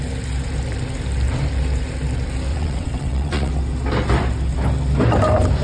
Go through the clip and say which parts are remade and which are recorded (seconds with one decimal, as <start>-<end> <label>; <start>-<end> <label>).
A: 0.0-2.5 recorded; 2.5-3.5 remade; 3.5-5.6 recorded